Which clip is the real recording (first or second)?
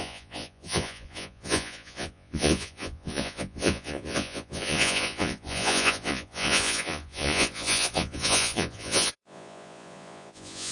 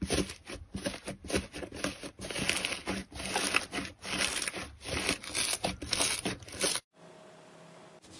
second